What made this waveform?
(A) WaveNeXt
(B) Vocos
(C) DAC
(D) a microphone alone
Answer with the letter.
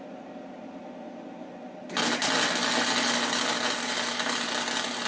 D